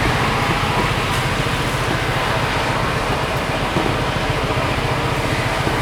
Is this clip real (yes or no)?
yes